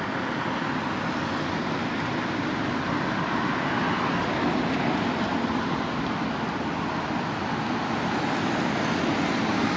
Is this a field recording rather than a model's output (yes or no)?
yes